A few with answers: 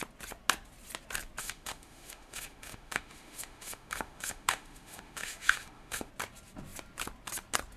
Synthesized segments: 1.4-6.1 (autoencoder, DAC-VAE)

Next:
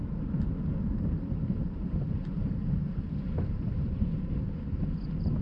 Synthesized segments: 0.9-4.0 (vocoder, BigVGAN v2)

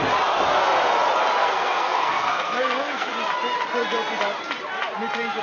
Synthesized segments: 1.4-3.1 (codec, SNAC)

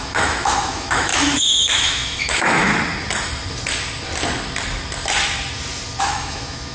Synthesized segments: 0.0-2.7 (autoencoder, DAC-VAE); 6.0-6.7

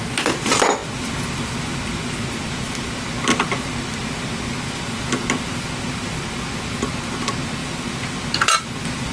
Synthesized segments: none

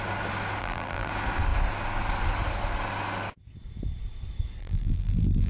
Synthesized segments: 0.6-1.1 (vocoder, BigVGAN v2); 4.6-5.5

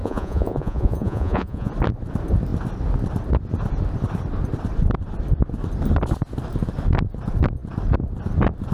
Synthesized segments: 0.0-1.7 (vocoder, Vocos)